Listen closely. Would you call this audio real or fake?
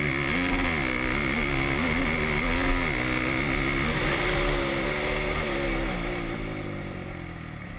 real